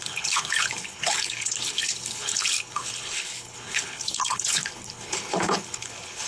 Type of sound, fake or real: fake